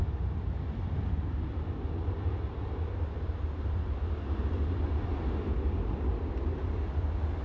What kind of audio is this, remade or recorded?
recorded